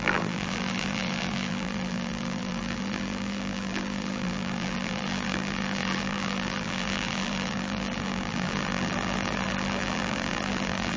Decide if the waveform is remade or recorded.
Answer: remade